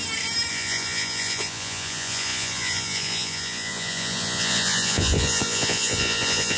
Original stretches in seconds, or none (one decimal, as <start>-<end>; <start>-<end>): 0.0-0.5